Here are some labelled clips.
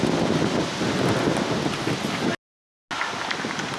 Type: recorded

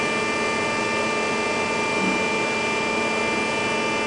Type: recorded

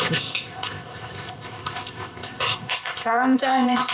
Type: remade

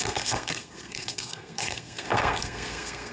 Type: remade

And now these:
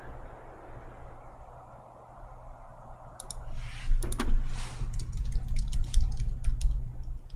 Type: recorded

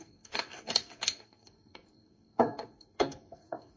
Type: remade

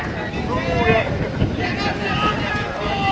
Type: recorded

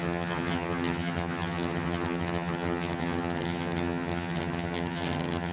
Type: remade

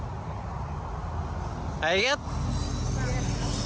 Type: recorded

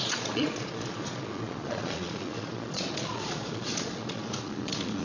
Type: remade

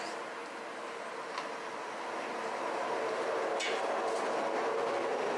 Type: recorded